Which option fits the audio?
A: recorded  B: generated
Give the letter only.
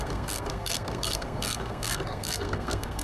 B